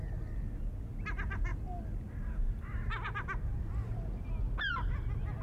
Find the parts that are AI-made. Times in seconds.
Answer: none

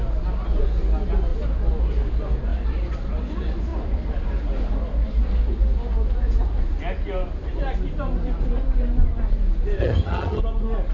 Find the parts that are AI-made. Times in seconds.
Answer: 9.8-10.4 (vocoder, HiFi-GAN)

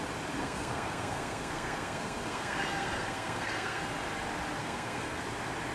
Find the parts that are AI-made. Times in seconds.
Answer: 0.4-3.8 (codec, SNAC); 4.6-5.2